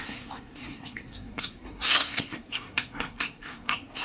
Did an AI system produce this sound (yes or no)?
yes